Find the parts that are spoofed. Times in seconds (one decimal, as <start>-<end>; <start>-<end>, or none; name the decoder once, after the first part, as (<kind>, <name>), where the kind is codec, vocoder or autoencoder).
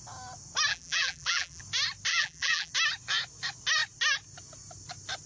0.7-1.6 (vocoder, BigVGAN v2); 2.1-2.7